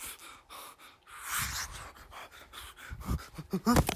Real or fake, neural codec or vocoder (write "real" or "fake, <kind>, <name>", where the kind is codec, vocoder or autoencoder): real